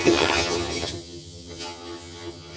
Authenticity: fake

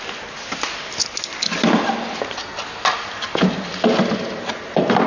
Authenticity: real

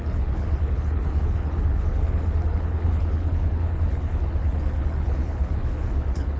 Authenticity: fake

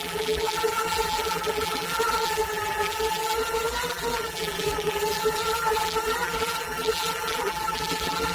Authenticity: fake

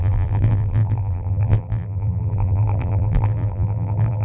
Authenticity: fake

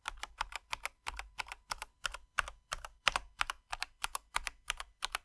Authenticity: real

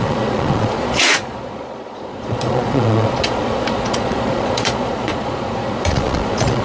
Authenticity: fake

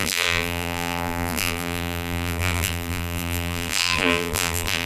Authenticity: fake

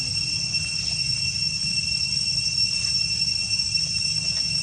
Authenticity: real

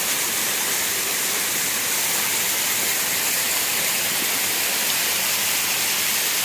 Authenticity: real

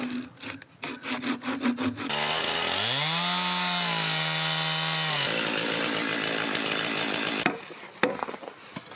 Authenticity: real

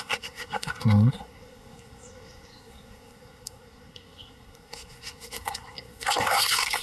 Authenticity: fake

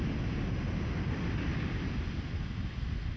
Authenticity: real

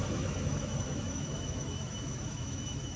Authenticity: fake